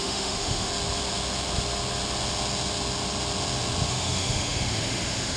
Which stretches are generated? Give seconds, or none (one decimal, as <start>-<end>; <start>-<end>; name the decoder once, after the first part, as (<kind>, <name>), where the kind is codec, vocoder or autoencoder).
0.0-0.7 (autoencoder, DAC-VAE); 3.9-5.4